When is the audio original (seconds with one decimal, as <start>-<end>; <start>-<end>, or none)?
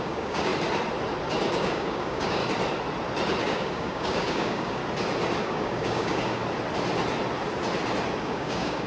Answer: 0.5-1.5; 2.4-3.4; 4.8-5.4; 6.4-8.2